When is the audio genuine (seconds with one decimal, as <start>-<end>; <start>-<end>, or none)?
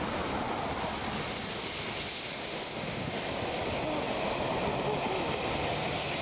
0.0-2.5; 3.1-6.2